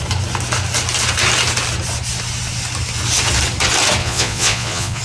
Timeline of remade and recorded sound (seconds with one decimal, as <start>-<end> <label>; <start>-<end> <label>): 0.0-4.0 recorded; 4.0-5.0 remade